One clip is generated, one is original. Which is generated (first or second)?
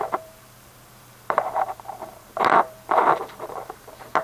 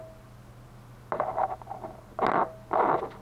first